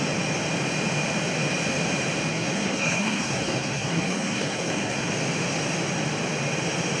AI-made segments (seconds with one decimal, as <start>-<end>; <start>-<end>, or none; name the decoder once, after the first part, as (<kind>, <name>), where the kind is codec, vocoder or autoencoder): 2.3-5.1 (codec, SNAC)